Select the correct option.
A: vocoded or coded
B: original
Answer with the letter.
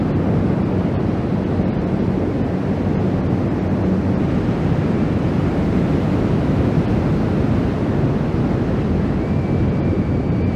B